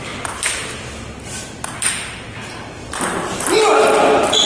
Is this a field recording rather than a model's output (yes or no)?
yes